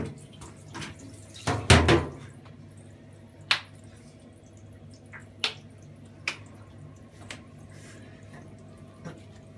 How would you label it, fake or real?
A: real